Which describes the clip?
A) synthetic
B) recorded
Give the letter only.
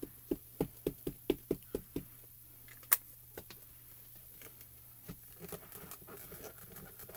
B